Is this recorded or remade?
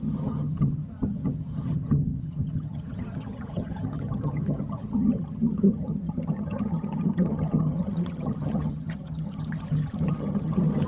remade